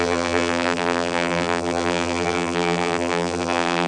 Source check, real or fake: fake